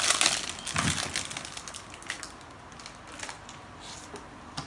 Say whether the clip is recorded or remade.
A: recorded